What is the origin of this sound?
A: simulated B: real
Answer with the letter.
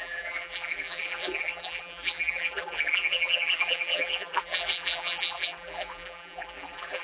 A